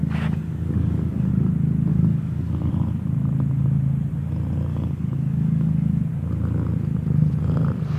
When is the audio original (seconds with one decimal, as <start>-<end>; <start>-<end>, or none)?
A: 1.3-1.9; 2.7-4.7; 6.0-8.0